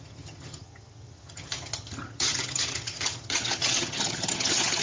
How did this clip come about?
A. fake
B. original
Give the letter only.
A